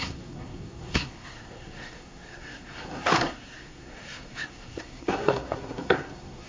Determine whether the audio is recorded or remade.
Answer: remade